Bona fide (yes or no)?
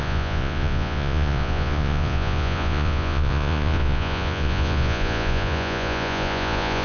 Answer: no